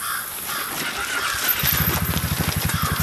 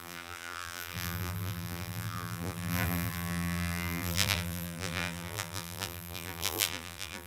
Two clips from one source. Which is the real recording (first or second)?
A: first